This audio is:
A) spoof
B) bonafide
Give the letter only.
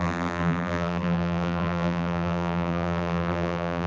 A